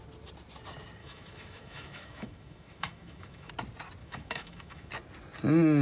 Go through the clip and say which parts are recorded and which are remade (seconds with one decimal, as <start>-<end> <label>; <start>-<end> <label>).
0.0-1.0 recorded; 1.0-3.5 remade; 3.5-4.0 recorded; 4.0-4.9 remade; 4.9-5.8 recorded